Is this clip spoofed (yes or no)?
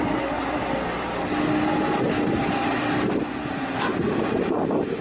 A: no